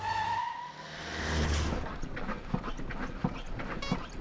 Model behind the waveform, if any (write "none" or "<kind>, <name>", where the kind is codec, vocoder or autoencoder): none